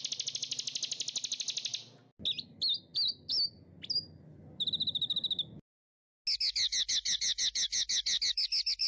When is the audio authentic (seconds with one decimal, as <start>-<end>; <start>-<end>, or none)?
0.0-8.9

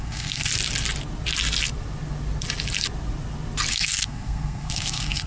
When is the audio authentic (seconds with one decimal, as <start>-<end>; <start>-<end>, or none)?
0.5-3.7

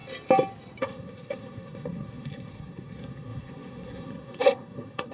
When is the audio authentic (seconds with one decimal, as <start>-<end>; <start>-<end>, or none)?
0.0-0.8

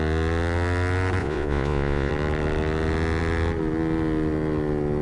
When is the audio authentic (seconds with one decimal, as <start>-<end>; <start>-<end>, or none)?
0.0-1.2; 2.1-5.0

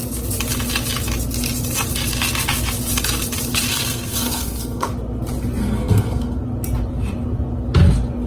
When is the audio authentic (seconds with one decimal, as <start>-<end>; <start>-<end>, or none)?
0.0-3.7; 4.9-5.6; 6.4-8.3

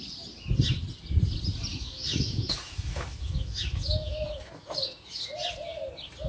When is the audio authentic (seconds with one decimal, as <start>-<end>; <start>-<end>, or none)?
0.0-1.7; 5.3-6.3

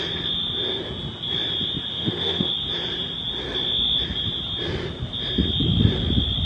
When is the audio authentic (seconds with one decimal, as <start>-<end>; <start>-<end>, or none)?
0.0-1.9; 2.5-6.5